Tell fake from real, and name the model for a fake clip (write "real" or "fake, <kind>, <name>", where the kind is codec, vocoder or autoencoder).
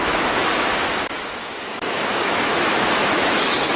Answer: fake, autoencoder, DAC-VAE